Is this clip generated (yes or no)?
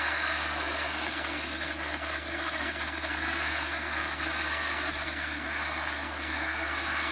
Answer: yes